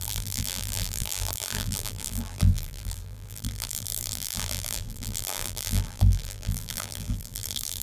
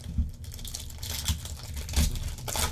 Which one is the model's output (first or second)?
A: first